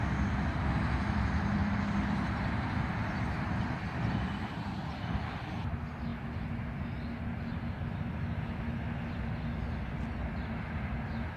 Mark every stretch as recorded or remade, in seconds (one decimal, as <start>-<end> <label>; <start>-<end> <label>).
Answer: 0.0-11.4 recorded